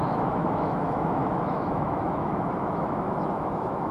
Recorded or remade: remade